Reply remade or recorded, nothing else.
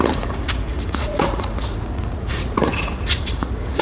remade